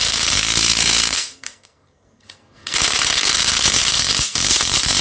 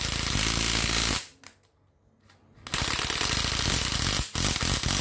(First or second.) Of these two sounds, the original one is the second